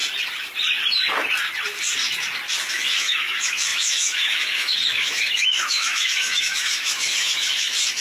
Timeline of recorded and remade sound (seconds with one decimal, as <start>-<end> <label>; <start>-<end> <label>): 0.0-2.7 recorded; 2.7-8.0 remade